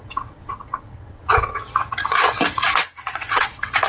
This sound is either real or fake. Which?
fake